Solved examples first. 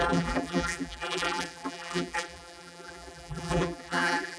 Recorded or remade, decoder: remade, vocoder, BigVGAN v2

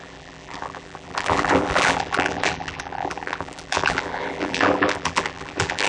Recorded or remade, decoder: remade, vocoder, BigVGAN v2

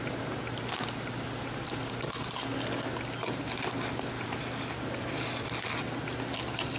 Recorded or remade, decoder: recorded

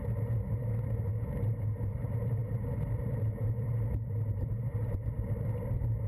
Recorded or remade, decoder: remade, vocoder, BigVGAN v2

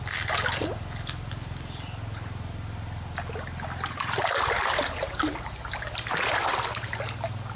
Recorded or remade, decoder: recorded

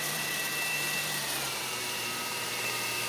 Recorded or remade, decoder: remade, vocoder, BigVGAN v2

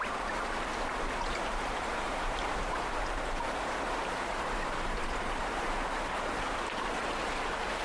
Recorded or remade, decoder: remade, vocoder, BigVGAN v2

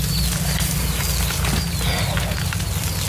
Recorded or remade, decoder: recorded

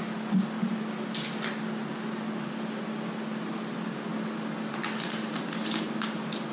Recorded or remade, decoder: recorded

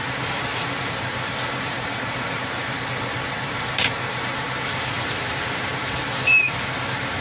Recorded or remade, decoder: remade, vocoder, BigVGAN v2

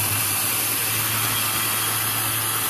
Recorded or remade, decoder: recorded